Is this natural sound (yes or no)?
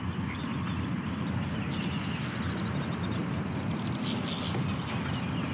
yes